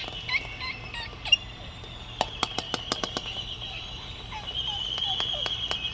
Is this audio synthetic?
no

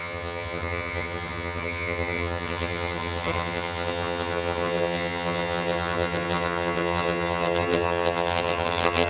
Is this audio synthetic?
yes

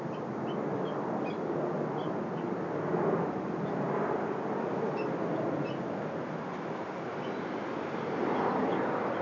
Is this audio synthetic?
no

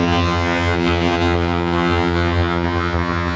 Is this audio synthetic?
yes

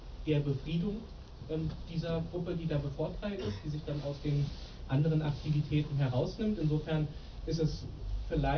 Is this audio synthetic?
no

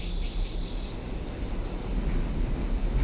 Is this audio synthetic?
no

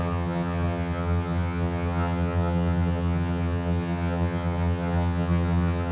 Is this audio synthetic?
yes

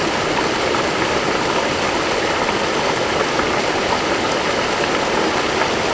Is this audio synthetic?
no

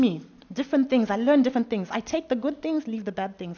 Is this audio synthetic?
no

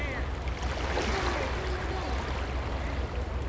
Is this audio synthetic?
no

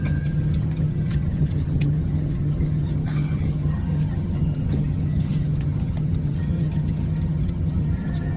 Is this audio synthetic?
yes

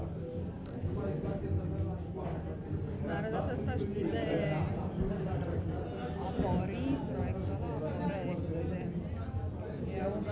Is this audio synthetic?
no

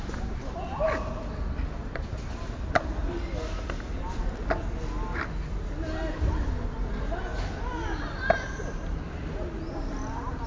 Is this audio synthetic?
no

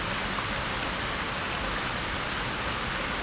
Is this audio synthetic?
no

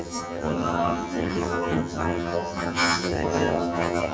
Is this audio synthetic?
yes